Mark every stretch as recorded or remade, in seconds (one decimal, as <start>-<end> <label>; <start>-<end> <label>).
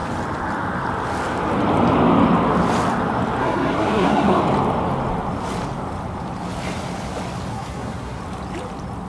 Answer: 0.0-3.4 recorded; 3.4-4.4 remade; 4.4-7.5 recorded; 7.5-8.2 remade; 8.2-9.1 recorded